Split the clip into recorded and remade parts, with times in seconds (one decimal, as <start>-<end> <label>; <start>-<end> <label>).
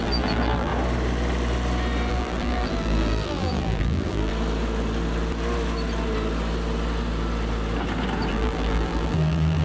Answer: 0.0-0.7 remade; 0.7-2.1 recorded; 2.1-4.3 remade; 4.3-8.3 recorded; 8.3-9.6 remade